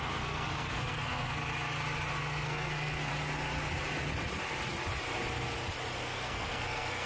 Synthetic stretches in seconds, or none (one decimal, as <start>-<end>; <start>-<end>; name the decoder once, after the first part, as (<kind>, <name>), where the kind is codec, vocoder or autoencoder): 0.0-1.4 (codec, SNAC); 2.2-3.1; 6.0-7.1